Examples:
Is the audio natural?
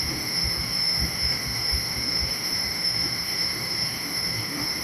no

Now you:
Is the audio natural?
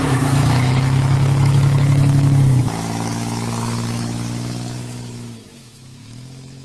no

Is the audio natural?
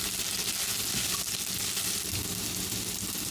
yes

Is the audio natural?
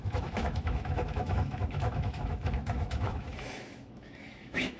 no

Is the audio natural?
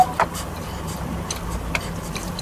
yes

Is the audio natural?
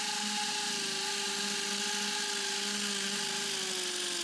yes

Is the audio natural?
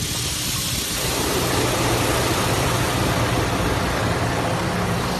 yes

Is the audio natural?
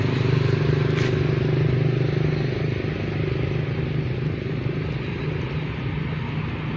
yes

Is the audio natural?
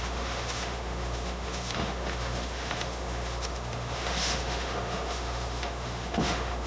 no